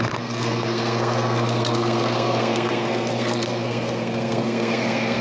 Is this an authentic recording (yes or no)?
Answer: no